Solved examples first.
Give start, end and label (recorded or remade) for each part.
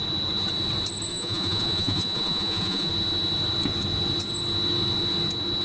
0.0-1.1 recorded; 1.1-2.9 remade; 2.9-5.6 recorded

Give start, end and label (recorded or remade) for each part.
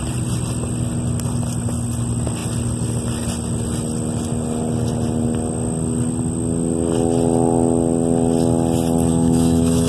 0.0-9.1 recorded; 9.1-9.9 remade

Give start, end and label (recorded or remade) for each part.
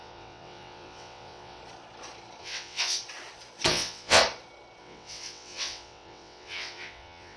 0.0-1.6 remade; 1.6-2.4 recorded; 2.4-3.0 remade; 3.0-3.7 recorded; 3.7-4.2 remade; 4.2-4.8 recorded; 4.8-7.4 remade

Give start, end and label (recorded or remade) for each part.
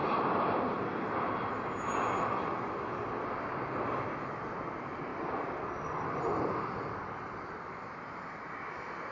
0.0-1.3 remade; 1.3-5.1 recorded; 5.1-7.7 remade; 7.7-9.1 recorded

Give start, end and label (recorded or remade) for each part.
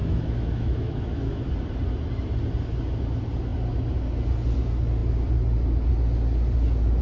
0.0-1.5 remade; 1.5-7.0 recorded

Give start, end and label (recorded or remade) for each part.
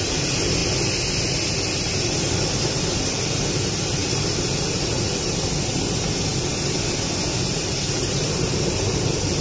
0.0-9.4 recorded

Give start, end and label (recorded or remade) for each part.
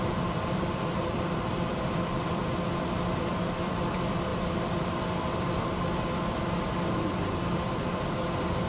0.0-2.4 remade; 2.4-3.1 recorded; 3.1-4.3 remade; 4.3-6.6 recorded; 6.6-8.7 remade